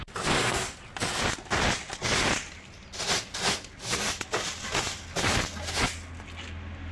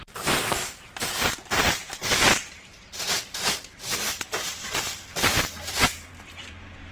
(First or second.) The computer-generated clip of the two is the second